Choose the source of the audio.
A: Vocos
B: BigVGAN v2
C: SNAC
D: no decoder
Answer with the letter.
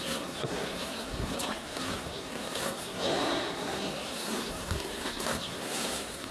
C